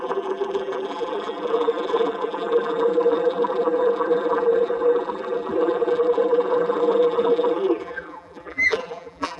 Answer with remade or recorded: remade